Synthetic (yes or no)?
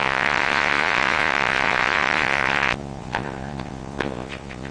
yes